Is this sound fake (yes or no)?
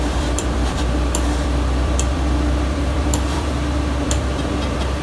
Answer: yes